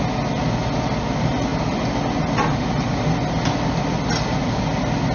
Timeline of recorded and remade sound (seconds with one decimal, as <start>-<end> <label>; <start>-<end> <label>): 0.0-5.1 recorded